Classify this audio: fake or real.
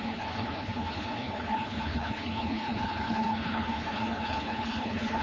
fake